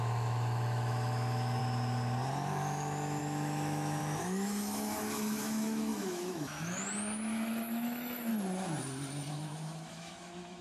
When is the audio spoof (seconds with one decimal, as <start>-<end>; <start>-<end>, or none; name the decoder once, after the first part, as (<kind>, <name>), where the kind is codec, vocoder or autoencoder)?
0.0-1.6 (autoencoder, DAC-VAE); 2.5-8.3; 9.3-10.6